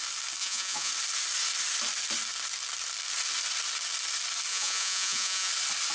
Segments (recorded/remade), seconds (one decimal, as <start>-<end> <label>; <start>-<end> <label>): 0.0-0.4 recorded; 0.4-0.9 remade; 0.9-4.5 recorded; 4.5-5.5 remade; 5.5-5.9 recorded